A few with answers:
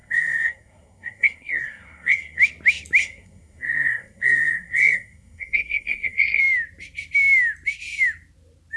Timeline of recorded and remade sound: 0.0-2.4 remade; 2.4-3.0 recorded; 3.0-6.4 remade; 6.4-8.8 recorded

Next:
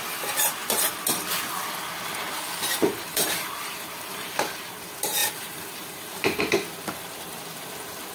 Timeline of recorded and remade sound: 0.0-2.8 recorded; 2.8-4.3 remade; 4.3-5.2 recorded; 5.2-6.4 remade; 6.4-8.1 recorded

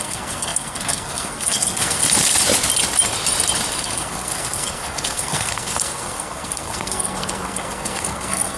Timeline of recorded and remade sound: 0.0-2.0 remade; 2.0-3.7 recorded; 3.7-8.6 remade

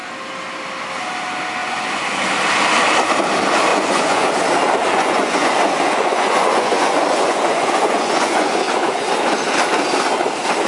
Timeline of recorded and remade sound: 0.0-1.6 recorded; 1.6-2.2 remade; 2.2-3.7 recorded; 3.7-4.3 remade; 4.3-4.8 recorded; 4.8-9.1 remade; 9.1-10.7 recorded

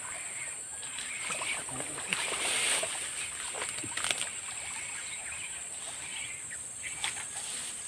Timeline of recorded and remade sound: 0.0-7.9 recorded

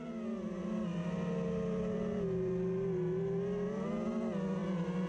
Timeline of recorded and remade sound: 0.0-5.1 recorded

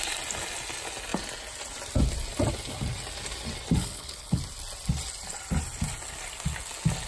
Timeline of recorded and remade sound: 0.0-3.8 recorded; 3.8-4.4 remade; 4.4-7.1 recorded